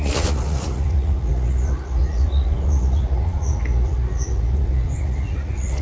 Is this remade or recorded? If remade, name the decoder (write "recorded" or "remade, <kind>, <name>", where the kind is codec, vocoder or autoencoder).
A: remade, vocoder, Vocos